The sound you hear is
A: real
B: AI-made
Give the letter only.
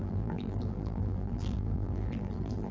B